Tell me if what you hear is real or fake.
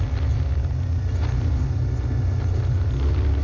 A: real